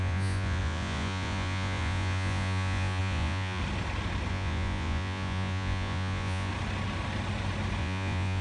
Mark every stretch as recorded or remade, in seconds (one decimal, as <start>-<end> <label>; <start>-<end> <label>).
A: 0.0-3.6 remade; 3.6-4.3 recorded; 4.3-6.5 remade; 6.5-7.8 recorded; 7.8-8.4 remade